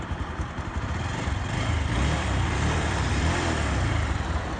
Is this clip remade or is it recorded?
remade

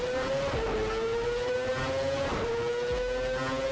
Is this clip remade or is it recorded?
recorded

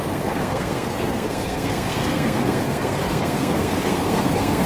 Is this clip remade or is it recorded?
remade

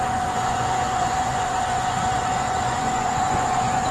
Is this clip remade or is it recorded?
remade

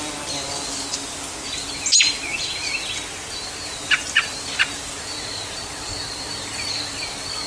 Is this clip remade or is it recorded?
recorded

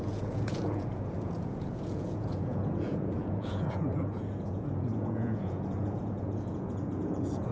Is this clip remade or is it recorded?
remade